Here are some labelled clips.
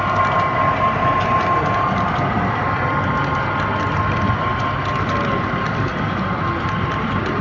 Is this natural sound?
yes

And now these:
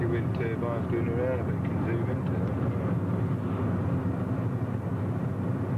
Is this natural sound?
yes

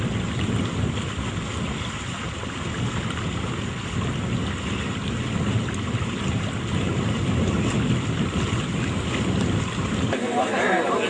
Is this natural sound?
yes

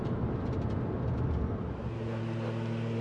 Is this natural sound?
yes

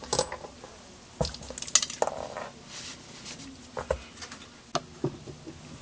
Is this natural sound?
yes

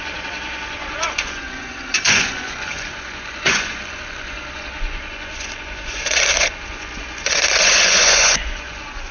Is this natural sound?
no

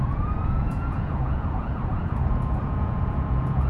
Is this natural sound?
no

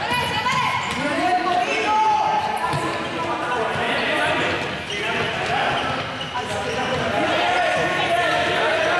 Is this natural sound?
yes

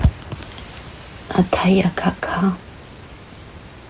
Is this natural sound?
yes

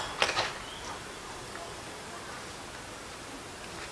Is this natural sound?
yes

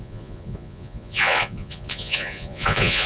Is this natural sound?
no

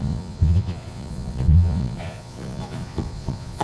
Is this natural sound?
no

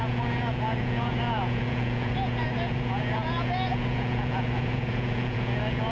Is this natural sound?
no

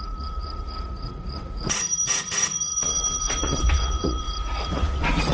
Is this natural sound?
no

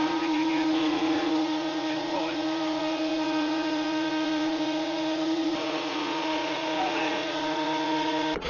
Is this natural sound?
no